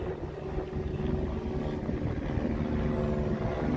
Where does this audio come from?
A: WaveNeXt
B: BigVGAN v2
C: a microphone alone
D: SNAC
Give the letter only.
C